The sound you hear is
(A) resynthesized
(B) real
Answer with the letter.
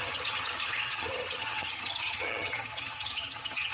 A